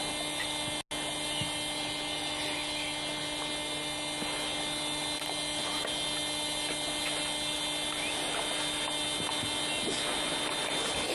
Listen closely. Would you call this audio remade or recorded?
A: recorded